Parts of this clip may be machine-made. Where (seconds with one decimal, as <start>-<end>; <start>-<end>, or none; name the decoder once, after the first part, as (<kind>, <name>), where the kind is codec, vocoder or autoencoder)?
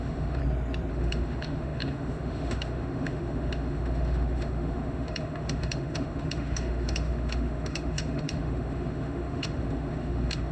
0.0-0.4 (autoencoder, DAC-VAE); 0.9-10.5